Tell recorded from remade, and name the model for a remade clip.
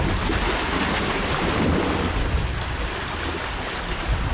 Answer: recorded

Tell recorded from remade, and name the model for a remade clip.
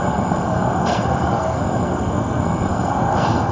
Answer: remade, codec, SNAC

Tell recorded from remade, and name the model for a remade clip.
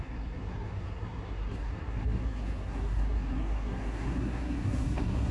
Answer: remade, codec, SNAC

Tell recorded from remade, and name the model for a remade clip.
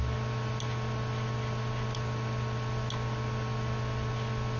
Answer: recorded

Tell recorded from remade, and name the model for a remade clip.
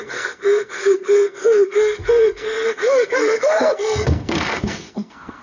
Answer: remade, codec, SNAC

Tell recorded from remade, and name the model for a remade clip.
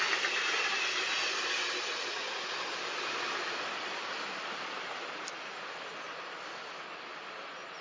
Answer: recorded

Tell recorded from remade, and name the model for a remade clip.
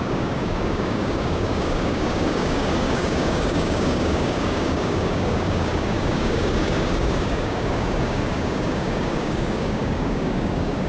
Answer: remade, codec, DAC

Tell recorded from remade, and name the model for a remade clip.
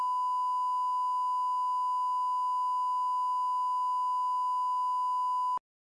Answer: recorded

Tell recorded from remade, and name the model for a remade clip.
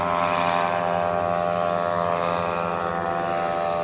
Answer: recorded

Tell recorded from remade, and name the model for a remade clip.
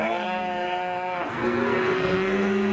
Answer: remade, codec, SNAC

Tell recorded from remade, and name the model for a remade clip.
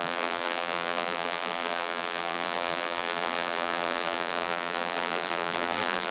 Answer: remade, vocoder, BigVGAN v2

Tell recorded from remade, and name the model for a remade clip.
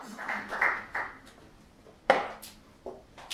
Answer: recorded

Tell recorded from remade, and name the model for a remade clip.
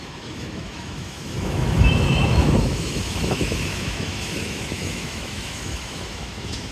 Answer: remade, autoencoder, DAC-VAE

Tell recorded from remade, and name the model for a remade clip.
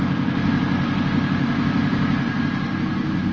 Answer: recorded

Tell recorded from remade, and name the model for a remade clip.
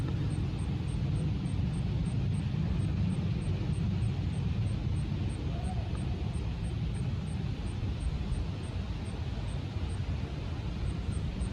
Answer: recorded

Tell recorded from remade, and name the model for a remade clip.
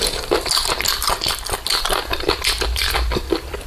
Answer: recorded